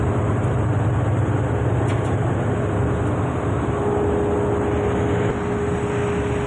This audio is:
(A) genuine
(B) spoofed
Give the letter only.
A